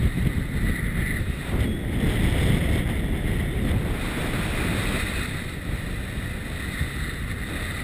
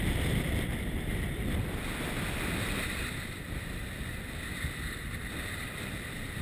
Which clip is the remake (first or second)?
second